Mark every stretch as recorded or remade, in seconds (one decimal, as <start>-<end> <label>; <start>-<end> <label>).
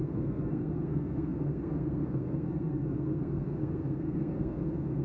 0.0-5.0 remade